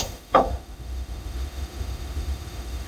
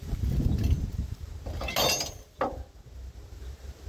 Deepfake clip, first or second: first